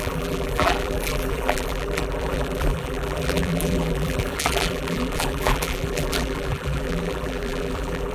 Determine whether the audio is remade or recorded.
remade